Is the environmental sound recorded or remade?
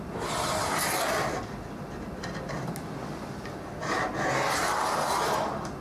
recorded